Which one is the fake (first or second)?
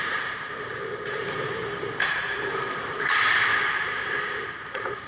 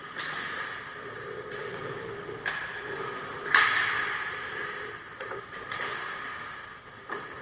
first